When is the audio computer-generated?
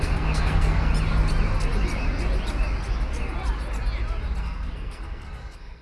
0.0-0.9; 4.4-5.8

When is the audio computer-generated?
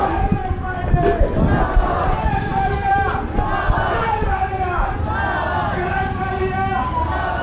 none